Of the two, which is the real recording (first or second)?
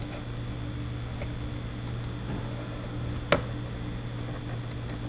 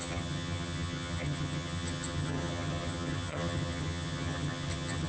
first